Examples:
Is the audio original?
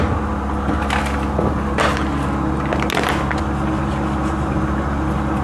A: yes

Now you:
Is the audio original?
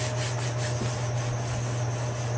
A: yes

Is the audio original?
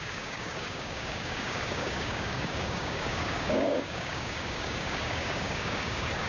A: no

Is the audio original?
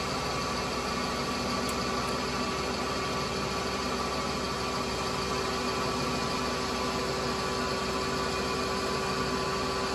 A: yes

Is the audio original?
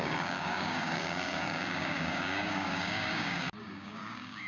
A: no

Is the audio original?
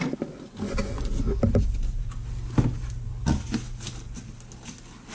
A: yes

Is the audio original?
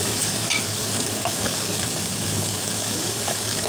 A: no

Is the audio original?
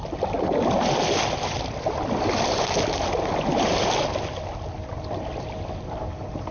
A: yes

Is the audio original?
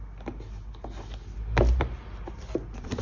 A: yes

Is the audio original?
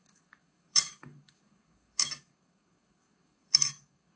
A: no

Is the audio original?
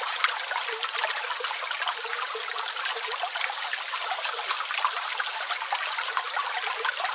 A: yes